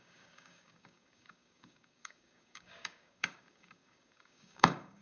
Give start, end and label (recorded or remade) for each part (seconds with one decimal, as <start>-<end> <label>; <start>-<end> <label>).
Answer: 0.0-5.0 remade